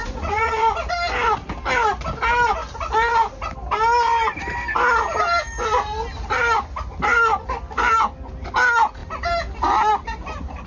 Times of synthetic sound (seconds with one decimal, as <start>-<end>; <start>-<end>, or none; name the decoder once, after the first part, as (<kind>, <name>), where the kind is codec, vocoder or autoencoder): 0.0-0.6 (vocoder, Vocos)